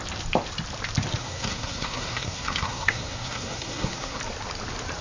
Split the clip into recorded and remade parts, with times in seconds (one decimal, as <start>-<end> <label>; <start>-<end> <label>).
0.0-1.2 recorded; 1.2-4.2 remade; 4.2-5.0 recorded